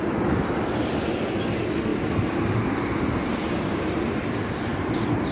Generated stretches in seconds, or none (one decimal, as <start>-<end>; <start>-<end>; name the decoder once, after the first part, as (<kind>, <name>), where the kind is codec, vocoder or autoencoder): none